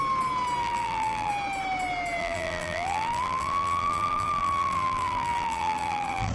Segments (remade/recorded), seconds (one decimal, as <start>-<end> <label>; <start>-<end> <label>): 0.0-0.6 recorded; 0.6-1.3 remade; 1.3-2.2 recorded; 2.2-6.3 remade